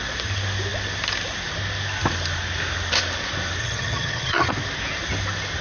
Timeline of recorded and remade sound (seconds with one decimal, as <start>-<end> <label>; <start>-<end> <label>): 0.0-3.6 recorded; 3.6-4.5 remade; 4.5-5.6 recorded